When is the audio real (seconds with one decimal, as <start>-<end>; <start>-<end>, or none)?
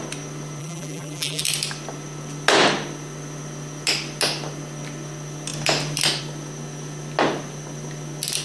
0.0-0.6; 1.4-8.4